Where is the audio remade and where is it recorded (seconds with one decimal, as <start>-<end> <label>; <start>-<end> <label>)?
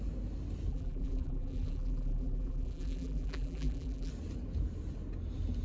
0.0-0.7 recorded; 0.7-4.1 remade; 4.1-5.6 recorded